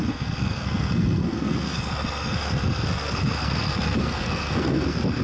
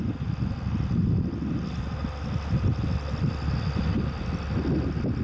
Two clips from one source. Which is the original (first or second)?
second